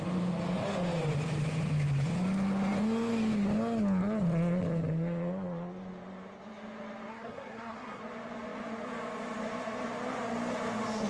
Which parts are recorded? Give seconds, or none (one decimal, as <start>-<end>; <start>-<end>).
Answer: 0.0-7.1; 8.0-11.1